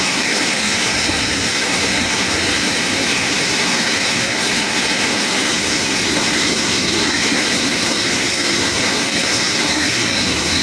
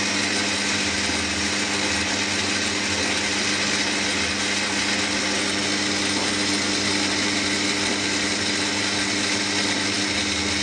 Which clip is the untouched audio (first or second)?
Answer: second